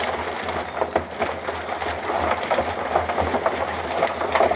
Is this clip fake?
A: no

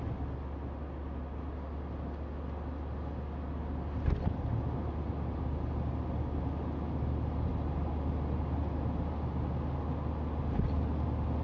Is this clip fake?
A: no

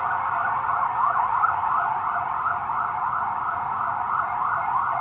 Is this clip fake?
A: no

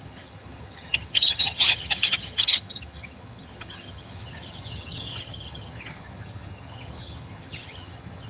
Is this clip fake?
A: yes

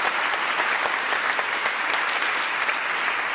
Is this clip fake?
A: no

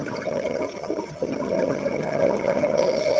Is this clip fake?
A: yes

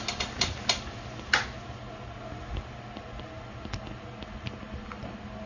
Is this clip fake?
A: no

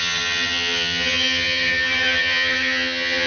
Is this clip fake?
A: yes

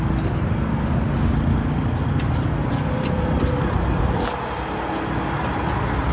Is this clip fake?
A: no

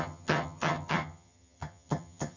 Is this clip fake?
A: yes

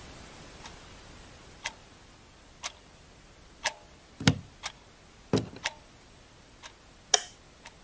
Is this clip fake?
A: no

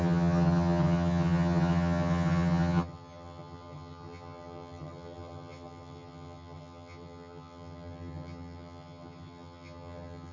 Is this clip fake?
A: yes